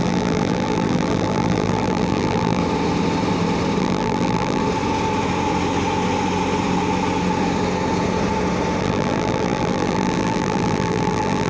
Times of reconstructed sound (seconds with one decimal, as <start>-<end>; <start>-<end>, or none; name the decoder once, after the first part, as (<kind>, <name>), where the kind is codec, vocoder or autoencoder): 0.0-2.6 (vocoder, BigVGAN v2); 3.8-4.6; 8.8-11.5